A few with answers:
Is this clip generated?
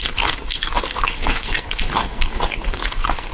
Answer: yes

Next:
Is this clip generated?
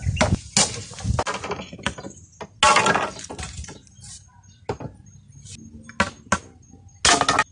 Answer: no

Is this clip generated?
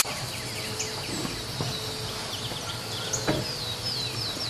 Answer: no